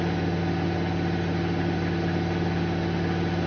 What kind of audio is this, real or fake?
real